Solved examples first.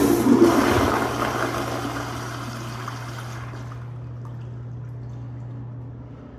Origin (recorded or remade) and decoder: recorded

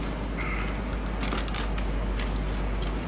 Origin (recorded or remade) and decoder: recorded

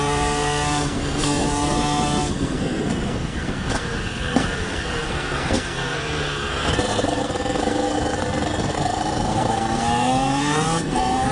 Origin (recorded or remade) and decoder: remade, codec, SNAC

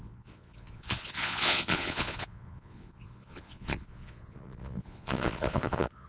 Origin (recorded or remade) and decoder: remade, vocoder, Vocos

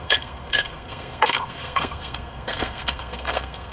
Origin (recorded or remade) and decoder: remade, codec, SNAC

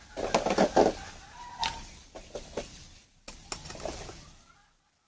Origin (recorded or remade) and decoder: recorded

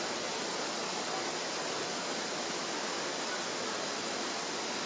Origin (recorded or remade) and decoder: recorded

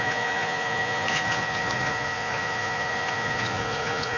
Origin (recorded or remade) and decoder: remade, vocoder, Vocos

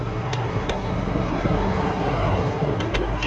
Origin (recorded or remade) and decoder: remade, codec, SNAC